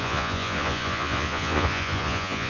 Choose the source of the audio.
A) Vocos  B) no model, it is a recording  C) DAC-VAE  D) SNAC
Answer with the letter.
A